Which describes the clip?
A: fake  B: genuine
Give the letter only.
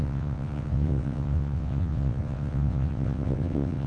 A